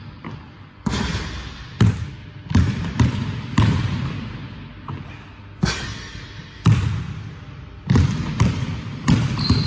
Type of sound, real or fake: real